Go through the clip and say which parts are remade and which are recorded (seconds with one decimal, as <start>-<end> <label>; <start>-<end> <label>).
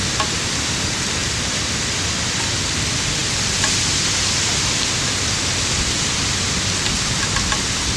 0.0-8.0 recorded